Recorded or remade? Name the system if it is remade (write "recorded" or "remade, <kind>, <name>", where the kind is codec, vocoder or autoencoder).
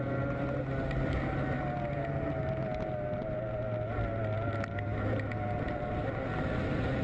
recorded